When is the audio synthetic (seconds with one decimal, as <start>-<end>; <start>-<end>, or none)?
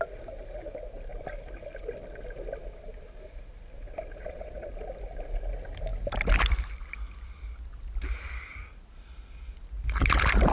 4.2-4.7